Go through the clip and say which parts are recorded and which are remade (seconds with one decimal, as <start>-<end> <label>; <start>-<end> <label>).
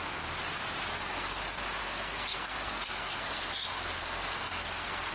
0.0-0.9 recorded; 0.9-1.4 remade; 1.4-1.8 recorded; 1.8-5.1 remade